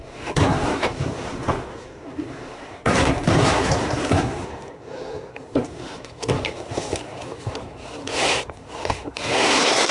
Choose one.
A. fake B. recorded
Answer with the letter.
A